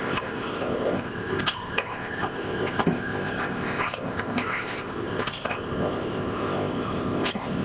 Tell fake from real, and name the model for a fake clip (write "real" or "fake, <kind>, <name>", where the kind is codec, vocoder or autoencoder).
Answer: fake, codec, ZipCodec